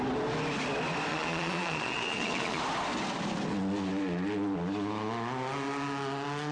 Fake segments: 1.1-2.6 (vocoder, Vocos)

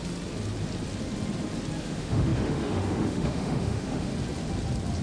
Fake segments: 1.8-4.1 (autoencoder, DAC-VAE)

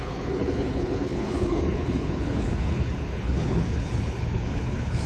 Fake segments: 0.0-5.1 (codec, HILCodec)

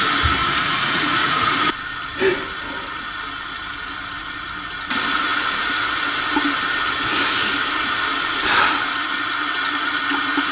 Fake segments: 0.4-1.5 (vocoder, Vocos)

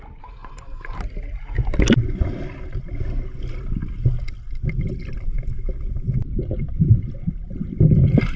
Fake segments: 0.4-1.0 (vocoder, BigVGAN v2)